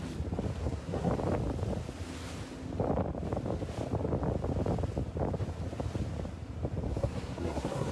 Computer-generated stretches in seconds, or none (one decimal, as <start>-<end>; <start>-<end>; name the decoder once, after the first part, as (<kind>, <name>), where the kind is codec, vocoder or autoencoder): 0.6-1.1 (codec, SNAC); 6.9-7.9

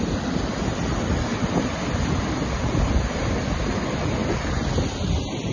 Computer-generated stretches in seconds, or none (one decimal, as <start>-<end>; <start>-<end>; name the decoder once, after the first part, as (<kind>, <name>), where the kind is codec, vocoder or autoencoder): none

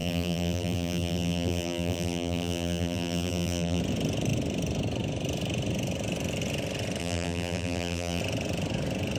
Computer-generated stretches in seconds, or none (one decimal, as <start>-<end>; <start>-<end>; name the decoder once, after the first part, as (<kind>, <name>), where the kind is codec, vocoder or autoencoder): 0.0-3.8 (vocoder, BigVGAN v2); 7.0-8.2

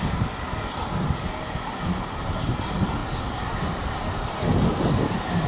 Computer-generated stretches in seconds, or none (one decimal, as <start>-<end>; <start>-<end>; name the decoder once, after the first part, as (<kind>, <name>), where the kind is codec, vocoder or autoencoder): none

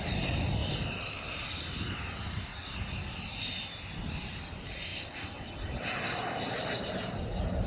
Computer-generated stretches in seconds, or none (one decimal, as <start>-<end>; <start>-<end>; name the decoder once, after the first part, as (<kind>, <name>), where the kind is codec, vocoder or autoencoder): 0.0-0.6 (vocoder, BigVGAN v2); 1.8-2.6; 4.2-7.7

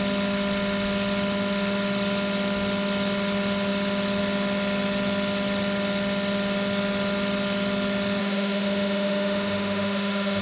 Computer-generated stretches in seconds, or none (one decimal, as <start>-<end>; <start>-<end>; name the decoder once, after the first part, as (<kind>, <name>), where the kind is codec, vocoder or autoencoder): 8.2-10.4 (autoencoder, DAC-VAE)

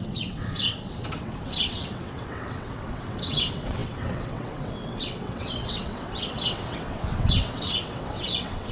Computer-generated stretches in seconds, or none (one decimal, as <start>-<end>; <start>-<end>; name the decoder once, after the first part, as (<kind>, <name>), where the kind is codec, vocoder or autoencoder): 0.0-8.7 (vocoder, WaveNeXt)